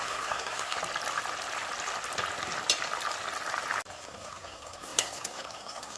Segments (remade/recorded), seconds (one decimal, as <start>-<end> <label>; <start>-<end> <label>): 0.0-0.8 remade; 0.8-3.9 recorded; 3.9-6.0 remade